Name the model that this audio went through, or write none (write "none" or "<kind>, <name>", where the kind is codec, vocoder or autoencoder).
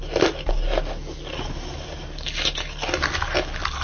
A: none